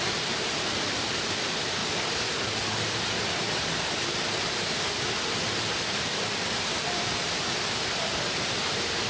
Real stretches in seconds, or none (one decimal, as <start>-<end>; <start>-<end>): none